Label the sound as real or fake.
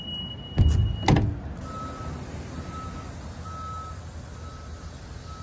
real